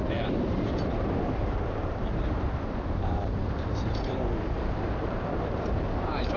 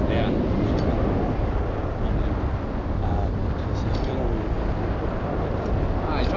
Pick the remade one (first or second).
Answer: first